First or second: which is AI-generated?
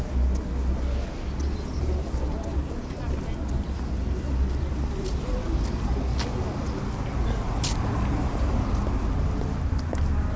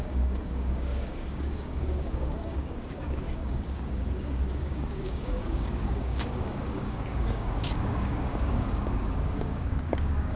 second